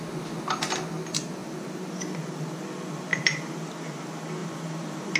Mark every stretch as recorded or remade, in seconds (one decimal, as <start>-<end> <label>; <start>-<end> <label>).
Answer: 0.0-3.1 recorded; 3.1-3.7 remade; 3.7-4.4 recorded; 4.4-5.2 remade